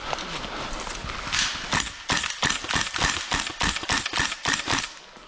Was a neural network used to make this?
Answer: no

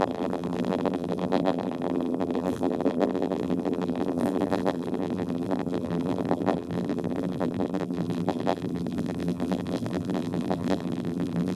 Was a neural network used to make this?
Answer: yes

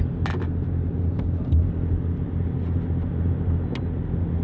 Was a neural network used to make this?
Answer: no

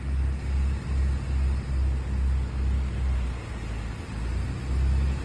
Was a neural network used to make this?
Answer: no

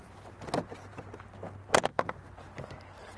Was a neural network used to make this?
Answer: no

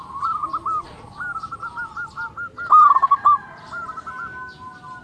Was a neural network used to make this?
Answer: no